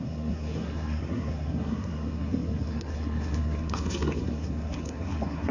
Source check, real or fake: fake